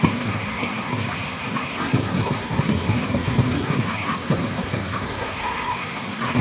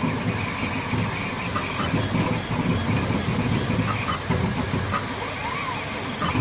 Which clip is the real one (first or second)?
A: second